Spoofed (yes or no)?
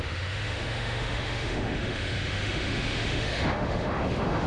yes